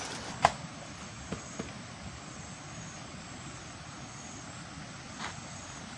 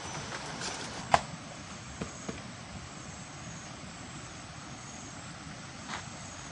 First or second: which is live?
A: first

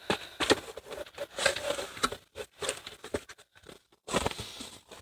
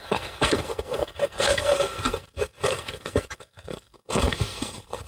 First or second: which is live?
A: first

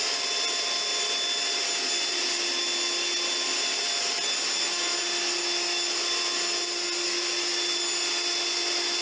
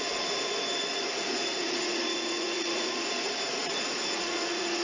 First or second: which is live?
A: first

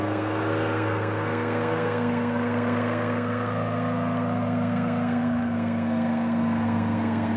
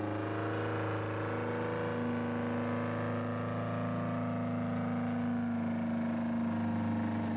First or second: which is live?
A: second